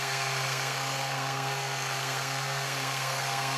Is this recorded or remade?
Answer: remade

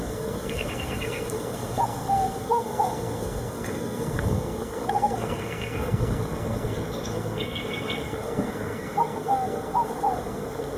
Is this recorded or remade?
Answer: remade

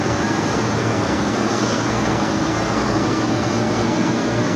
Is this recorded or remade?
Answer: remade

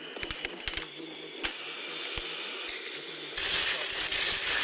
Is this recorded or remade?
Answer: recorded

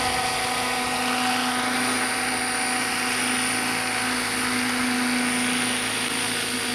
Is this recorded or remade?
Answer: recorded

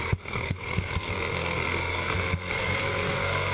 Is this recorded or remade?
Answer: remade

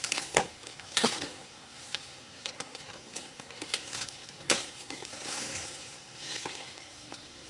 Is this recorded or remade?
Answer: remade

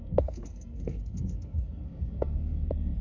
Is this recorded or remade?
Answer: remade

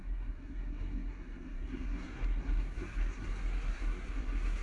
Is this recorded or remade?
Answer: remade